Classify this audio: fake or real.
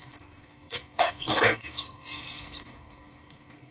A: fake